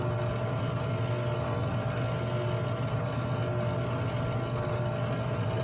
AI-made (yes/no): no